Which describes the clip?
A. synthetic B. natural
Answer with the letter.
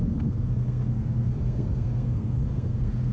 A